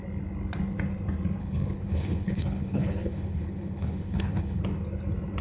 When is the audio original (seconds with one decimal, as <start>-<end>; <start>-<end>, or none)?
0.0-1.4; 4.6-5.4